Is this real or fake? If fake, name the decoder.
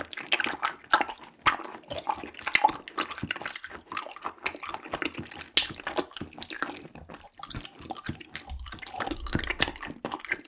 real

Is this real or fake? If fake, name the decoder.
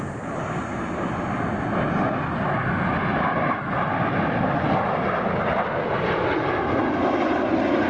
real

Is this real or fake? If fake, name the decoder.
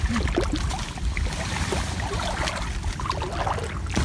real